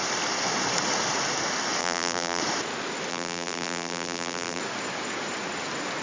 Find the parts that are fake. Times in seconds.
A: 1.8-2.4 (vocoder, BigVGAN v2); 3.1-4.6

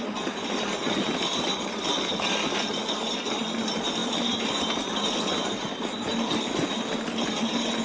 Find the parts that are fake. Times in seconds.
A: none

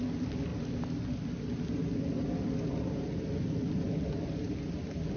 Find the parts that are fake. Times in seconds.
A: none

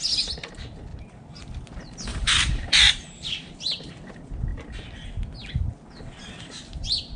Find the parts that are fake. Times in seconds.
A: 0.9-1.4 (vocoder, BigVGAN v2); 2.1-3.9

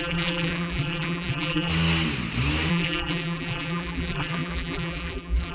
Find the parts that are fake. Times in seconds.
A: 0.0-1.7 (vocoder, BigVGAN v2); 2.7-5.5